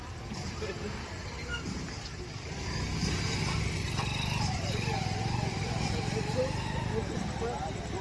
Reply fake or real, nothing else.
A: real